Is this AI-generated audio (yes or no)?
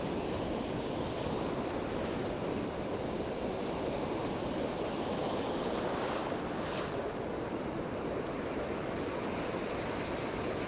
no